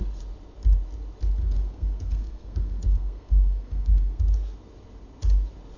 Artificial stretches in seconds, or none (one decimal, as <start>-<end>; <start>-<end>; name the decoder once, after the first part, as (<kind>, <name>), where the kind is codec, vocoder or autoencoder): 1.4-4.2 (codec, SNAC)